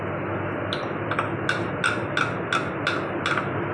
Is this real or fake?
real